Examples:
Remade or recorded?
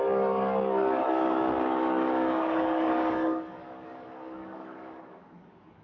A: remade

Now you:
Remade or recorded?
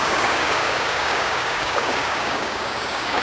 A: remade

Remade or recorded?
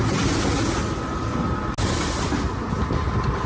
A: recorded